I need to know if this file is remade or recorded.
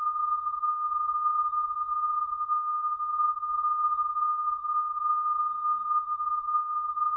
remade